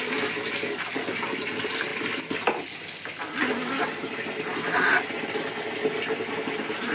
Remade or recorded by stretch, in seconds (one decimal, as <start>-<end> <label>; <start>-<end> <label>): 0.0-6.9 recorded

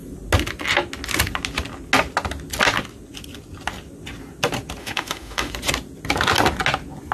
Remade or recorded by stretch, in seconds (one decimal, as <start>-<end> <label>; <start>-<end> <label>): 0.0-4.8 recorded; 4.8-5.5 remade; 5.5-7.1 recorded

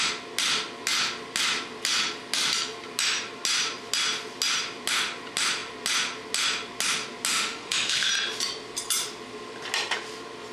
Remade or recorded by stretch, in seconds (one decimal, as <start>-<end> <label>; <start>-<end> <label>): 0.0-7.3 recorded; 7.3-8.1 remade; 8.1-10.5 recorded

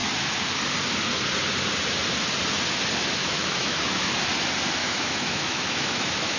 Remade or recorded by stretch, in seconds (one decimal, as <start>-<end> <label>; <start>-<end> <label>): 0.0-3.2 recorded; 3.2-4.1 remade; 4.1-4.8 recorded; 4.8-6.4 remade

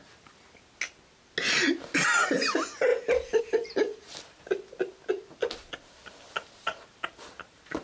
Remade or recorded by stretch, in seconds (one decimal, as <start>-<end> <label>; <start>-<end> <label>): 0.0-7.8 recorded